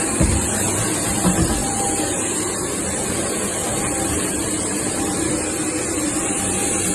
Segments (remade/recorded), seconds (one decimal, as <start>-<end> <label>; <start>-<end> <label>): 0.0-3.6 recorded; 3.6-4.5 remade; 4.5-6.9 recorded

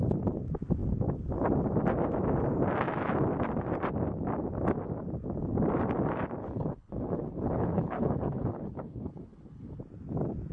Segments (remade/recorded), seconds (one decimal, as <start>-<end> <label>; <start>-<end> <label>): 0.0-6.4 recorded; 6.4-9.8 remade; 9.8-10.5 recorded

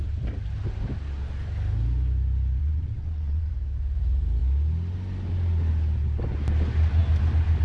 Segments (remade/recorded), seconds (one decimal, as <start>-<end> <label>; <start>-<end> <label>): 0.0-2.6 recorded; 2.6-3.5 remade; 3.5-7.6 recorded

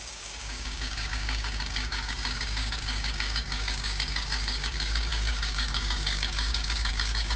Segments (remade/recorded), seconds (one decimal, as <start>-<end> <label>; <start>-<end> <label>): 0.0-7.4 remade

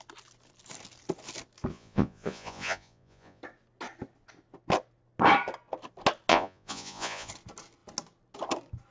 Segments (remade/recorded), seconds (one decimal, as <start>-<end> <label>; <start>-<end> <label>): 0.0-1.7 recorded; 1.7-3.4 remade; 3.4-6.3 recorded; 6.3-7.3 remade; 7.3-8.9 recorded

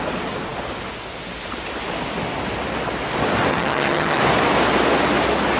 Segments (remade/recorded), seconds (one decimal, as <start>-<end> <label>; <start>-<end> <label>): 0.0-3.5 recorded; 3.5-4.2 remade; 4.2-5.6 recorded

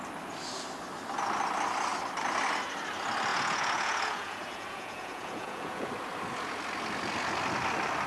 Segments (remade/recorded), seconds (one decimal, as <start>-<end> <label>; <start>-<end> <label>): 0.0-3.3 recorded; 3.3-5.9 remade; 5.9-8.1 recorded

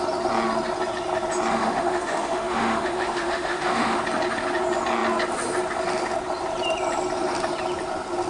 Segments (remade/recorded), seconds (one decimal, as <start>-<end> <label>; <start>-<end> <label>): 0.0-1.5 recorded; 1.5-4.0 remade; 4.0-8.3 recorded